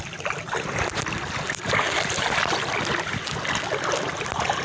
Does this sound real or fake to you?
real